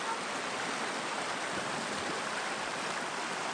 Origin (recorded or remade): recorded